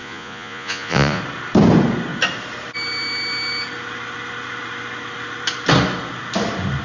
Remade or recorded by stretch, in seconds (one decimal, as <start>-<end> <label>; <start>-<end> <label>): 0.0-1.2 remade; 1.2-6.8 recorded